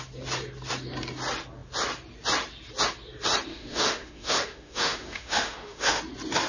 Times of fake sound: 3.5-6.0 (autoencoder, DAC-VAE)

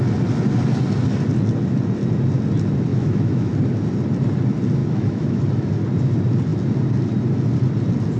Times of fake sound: 2.9-3.5 (autoencoder, DAC-VAE); 4.8-5.4

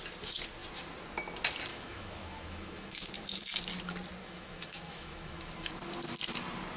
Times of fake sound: 1.7-3.1 (autoencoder, DAC-VAE); 4.2-5.7

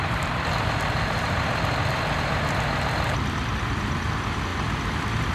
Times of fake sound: none

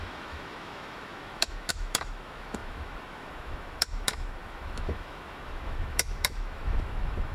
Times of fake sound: 0.0-7.3 (autoencoder, DAC-VAE)

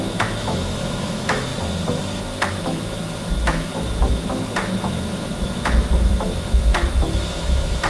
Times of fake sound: 0.0-1.5 (autoencoder, DAC-VAE); 2.5-7.9

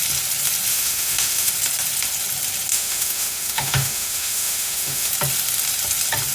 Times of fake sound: 0.7-1.5 (autoencoder, DAC-VAE); 2.7-5.1